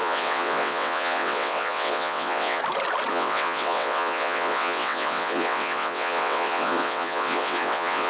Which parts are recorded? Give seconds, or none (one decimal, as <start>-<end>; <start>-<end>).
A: 2.6-3.1